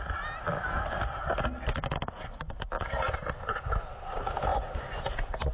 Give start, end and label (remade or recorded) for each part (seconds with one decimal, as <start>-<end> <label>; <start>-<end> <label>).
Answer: 0.0-4.5 recorded; 4.5-5.0 remade; 5.0-5.5 recorded